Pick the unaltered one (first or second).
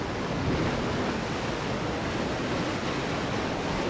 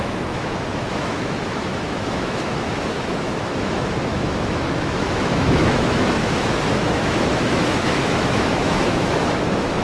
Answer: first